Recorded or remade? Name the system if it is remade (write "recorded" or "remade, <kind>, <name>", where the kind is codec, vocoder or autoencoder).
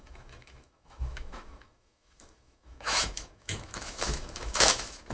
remade, autoencoder, DAC-VAE